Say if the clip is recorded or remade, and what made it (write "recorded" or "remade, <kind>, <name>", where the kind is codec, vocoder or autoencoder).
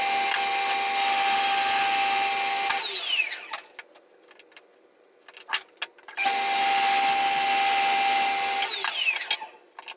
recorded